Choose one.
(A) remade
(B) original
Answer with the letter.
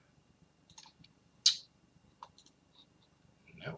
B